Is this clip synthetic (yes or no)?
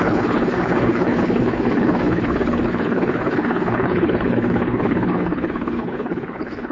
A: yes